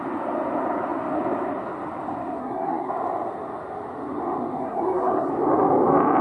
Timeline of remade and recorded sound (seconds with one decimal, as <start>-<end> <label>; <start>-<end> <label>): 0.0-2.4 recorded; 2.4-2.9 remade; 2.9-4.6 recorded; 4.6-5.3 remade; 5.3-6.2 recorded